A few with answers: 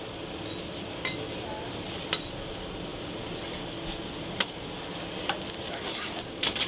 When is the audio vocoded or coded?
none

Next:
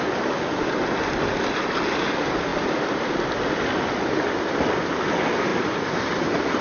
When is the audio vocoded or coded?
5.5-6.6 (vocoder, BigVGAN v2)

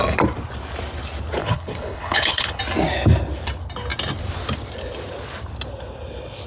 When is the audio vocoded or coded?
1.4-2.6 (codec, HILCodec)

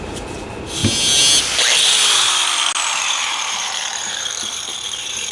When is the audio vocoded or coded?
0.0-0.8 (vocoder, BigVGAN v2); 3.0-5.3

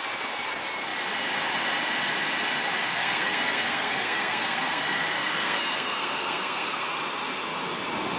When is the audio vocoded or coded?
2.8-6.9 (codec, SNAC)